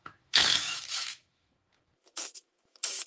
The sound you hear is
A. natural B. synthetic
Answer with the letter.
B